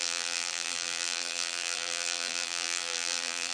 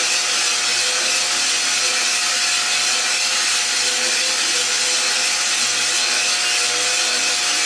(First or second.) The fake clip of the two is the first